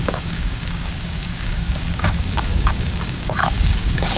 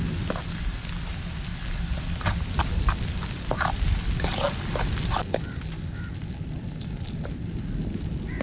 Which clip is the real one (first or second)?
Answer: second